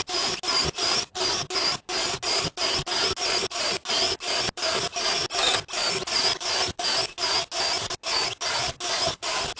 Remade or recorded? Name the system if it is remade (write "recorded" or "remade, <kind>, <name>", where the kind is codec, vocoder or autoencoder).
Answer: recorded